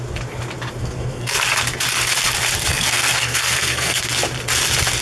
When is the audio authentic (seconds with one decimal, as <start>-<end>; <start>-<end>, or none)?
0.0-0.8; 1.4-2.7; 4.0-5.0